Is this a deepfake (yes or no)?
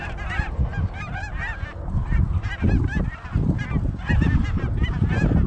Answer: no